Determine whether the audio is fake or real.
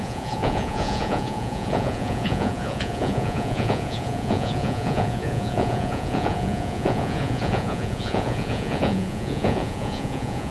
fake